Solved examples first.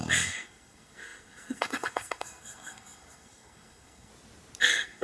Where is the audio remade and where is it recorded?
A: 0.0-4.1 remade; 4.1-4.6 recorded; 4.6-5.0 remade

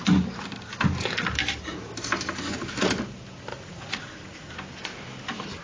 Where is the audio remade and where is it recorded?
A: 0.0-3.5 recorded; 3.5-4.5 remade; 4.5-5.6 recorded

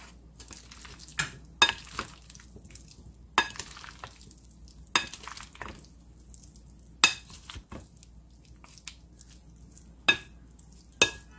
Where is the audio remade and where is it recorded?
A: 0.0-11.4 recorded

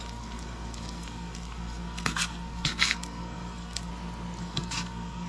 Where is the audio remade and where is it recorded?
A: 0.0-3.9 remade; 3.9-4.4 recorded; 4.4-5.3 remade

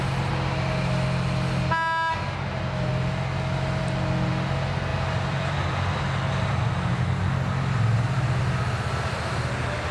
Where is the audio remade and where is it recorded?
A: 0.0-4.9 recorded; 4.9-6.0 remade; 6.0-9.9 recorded

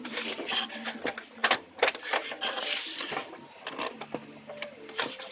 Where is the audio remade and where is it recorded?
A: 0.0-5.3 recorded

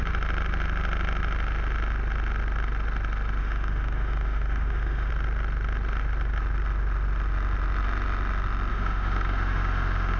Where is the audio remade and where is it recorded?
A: 0.0-3.4 recorded; 3.4-5.1 remade; 5.1-8.7 recorded; 8.7-10.2 remade

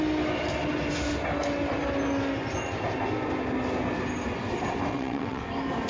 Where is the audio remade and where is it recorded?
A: 0.0-4.9 recorded; 4.9-5.4 remade; 5.4-5.9 recorded